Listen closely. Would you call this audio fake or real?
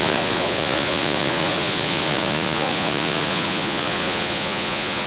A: fake